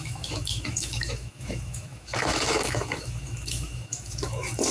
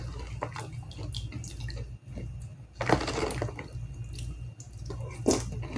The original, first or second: second